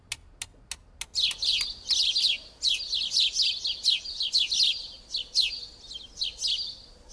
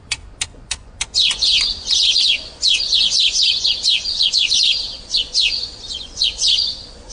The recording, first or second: first